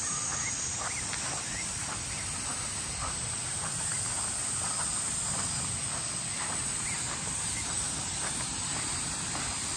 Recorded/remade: recorded